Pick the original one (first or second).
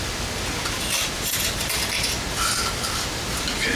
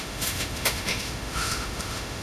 first